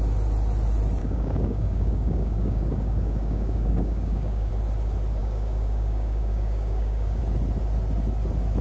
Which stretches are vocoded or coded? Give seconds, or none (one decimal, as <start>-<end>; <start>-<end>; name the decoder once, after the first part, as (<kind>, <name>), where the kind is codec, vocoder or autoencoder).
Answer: 1.0-4.5 (codec, DAC); 5.2-7.2

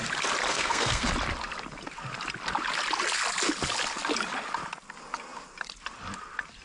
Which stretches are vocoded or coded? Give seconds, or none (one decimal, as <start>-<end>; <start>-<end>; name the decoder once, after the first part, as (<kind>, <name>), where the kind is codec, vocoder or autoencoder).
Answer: 0.5-1.1 (codec, SNAC)